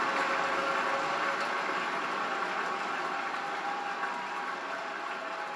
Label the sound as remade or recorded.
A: recorded